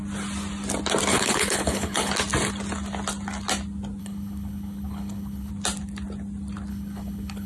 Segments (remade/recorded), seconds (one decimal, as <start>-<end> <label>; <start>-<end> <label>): 0.0-1.1 recorded; 1.1-2.1 remade; 2.1-4.0 recorded; 4.0-5.5 remade; 5.5-6.7 recorded; 6.7-7.5 remade